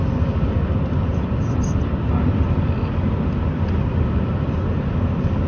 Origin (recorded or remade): recorded